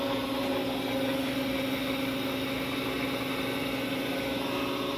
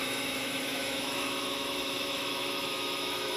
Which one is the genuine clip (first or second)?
first